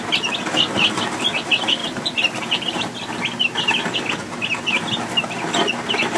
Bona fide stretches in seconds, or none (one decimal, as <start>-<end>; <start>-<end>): 0.0-1.8; 3.2-6.2

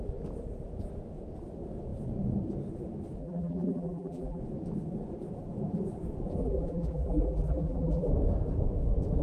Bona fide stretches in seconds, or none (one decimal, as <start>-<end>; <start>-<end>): 0.0-3.2; 4.4-6.4; 8.1-9.2

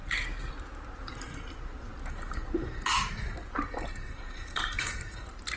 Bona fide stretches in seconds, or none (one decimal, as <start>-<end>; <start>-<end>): 0.0-5.6

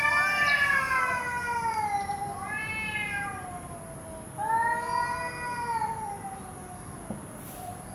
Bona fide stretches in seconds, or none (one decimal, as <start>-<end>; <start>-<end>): 0.0-7.9

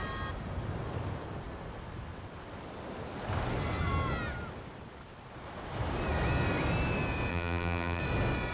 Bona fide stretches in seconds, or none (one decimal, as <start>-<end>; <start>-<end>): 0.0-7.3; 8.0-8.5

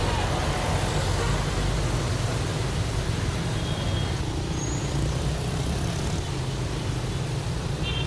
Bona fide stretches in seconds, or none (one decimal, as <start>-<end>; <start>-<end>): 0.0-2.5; 3.4-8.1

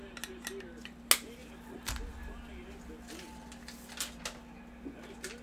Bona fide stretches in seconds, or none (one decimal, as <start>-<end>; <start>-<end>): 0.0-5.4

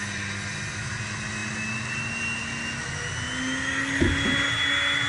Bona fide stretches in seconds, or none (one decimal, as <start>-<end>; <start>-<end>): 0.0-5.1